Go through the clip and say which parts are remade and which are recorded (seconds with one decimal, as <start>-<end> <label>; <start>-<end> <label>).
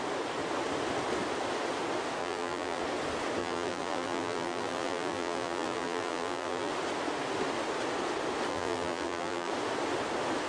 0.0-2.2 recorded; 2.2-2.8 remade; 2.8-3.4 recorded; 3.4-6.7 remade; 6.7-8.5 recorded; 8.5-9.5 remade; 9.5-10.5 recorded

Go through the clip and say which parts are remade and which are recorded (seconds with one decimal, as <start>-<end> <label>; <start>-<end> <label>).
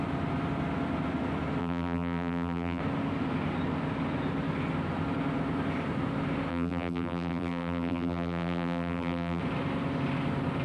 0.0-1.6 recorded; 1.6-2.8 remade; 2.8-6.5 recorded; 6.5-9.4 remade; 9.4-10.6 recorded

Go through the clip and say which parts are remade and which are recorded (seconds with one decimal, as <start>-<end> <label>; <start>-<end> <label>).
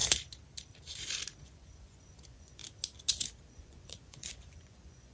0.0-1.4 recorded; 1.4-2.6 remade; 2.6-3.5 recorded; 3.5-5.1 remade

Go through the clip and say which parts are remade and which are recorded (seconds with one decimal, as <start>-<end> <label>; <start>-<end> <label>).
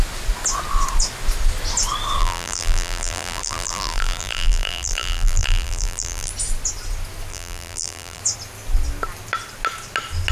0.0-2.2 recorded; 2.2-6.3 remade; 6.3-7.3 recorded; 7.3-8.2 remade; 8.2-10.3 recorded